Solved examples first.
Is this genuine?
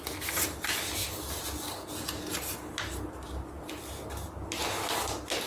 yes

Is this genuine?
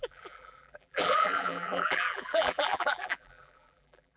no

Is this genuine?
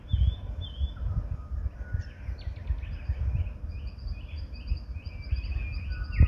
yes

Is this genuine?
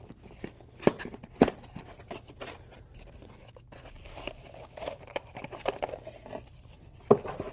yes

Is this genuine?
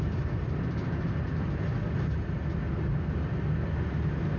yes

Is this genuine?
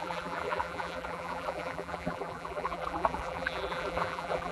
no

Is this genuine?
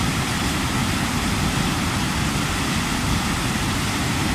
yes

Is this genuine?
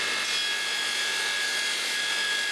yes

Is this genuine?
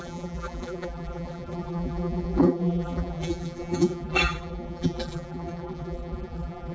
no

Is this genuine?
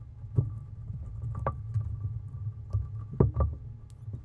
yes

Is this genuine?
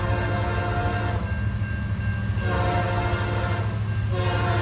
yes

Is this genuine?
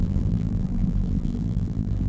no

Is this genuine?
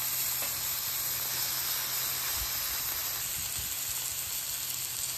yes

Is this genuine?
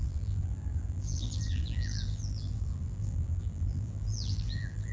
no